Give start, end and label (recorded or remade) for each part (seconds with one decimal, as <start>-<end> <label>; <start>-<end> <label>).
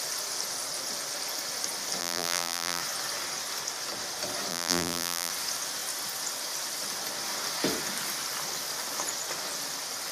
0.0-2.0 recorded; 2.0-2.8 remade; 2.8-4.5 recorded; 4.5-5.3 remade; 5.3-10.1 recorded